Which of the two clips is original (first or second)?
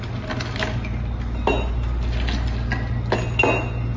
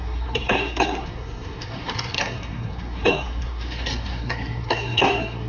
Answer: first